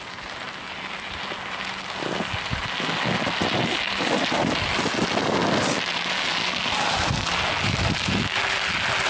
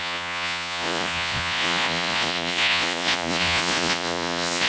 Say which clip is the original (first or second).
first